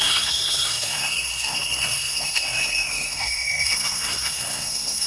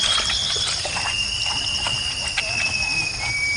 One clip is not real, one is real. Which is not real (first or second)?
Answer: first